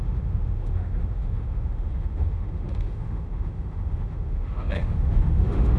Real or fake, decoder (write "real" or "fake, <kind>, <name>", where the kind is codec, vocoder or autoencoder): fake, autoencoder, DAC-VAE